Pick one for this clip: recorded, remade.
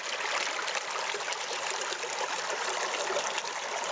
recorded